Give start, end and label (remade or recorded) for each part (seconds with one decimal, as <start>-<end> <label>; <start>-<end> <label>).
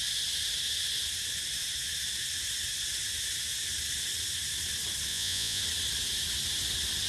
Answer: 0.0-5.1 recorded; 5.1-5.6 remade; 5.6-7.1 recorded